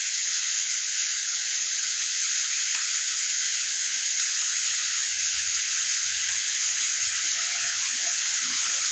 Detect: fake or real fake